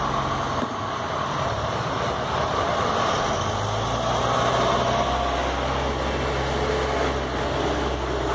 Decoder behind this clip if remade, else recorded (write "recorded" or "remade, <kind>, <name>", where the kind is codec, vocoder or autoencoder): recorded